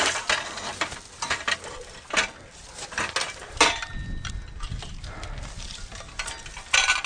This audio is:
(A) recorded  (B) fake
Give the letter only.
A